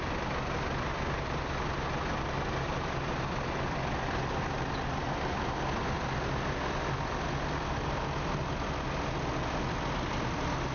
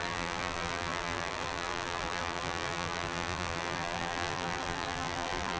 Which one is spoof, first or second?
second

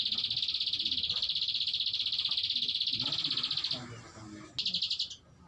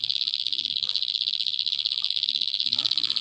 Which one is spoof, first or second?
second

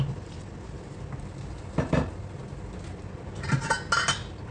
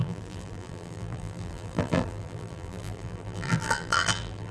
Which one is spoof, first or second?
second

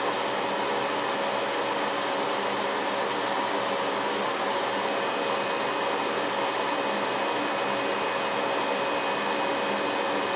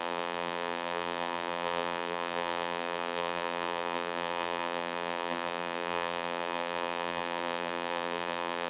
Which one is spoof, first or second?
second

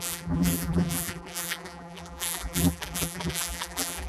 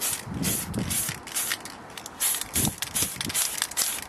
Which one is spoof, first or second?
first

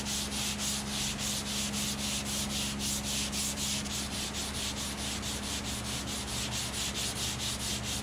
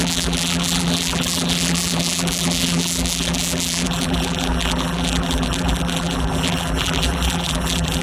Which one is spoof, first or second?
second